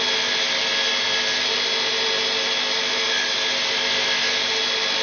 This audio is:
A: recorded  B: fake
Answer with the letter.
A